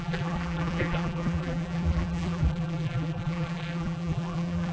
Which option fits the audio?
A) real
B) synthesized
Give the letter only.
B